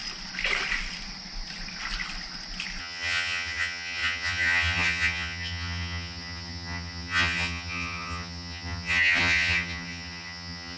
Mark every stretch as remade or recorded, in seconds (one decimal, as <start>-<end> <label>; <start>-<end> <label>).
0.0-2.8 recorded; 2.8-10.8 remade